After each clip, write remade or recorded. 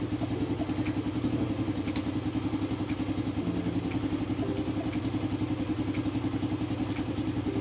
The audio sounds recorded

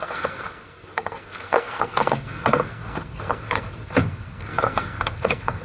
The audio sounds remade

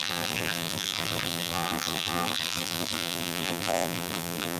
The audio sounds remade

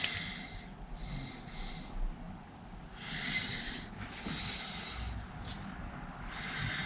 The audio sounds recorded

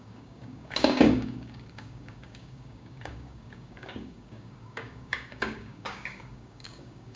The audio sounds remade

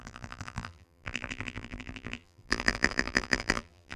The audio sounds remade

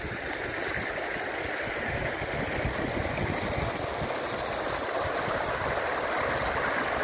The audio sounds recorded